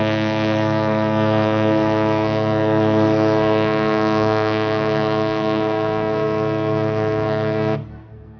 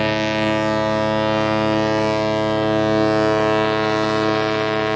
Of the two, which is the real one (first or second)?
second